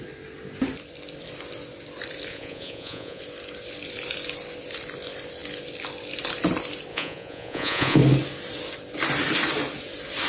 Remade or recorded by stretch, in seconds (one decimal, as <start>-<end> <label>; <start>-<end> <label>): 0.0-2.3 recorded; 2.3-3.2 remade; 3.2-6.9 recorded; 6.9-8.0 remade; 8.0-10.3 recorded

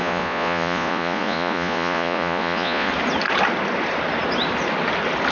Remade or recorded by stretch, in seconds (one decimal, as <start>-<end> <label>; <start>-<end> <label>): 0.0-2.9 remade; 2.9-5.3 recorded

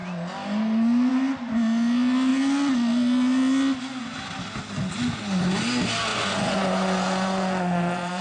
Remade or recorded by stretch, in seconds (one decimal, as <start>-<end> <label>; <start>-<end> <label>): 0.0-6.1 recorded; 6.1-8.2 remade